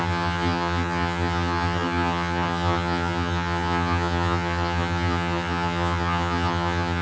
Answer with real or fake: fake